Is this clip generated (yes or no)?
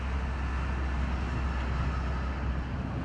no